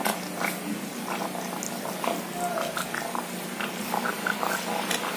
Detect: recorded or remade recorded